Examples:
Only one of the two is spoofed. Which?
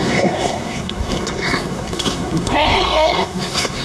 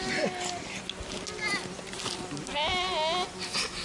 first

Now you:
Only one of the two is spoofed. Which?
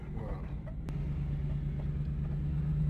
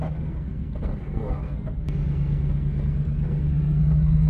second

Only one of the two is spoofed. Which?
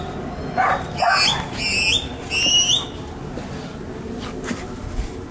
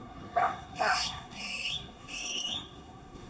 second